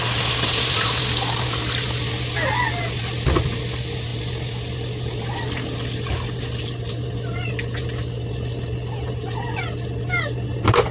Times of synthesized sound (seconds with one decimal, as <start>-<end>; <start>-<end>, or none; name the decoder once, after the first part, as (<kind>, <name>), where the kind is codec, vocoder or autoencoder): none